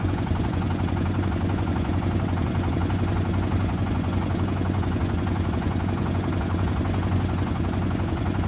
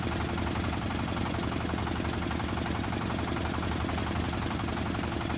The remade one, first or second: first